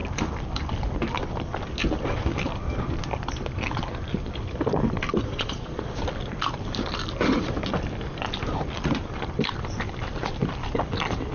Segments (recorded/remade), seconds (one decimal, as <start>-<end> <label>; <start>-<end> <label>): 0.0-5.3 recorded; 5.3-5.9 remade; 5.9-11.3 recorded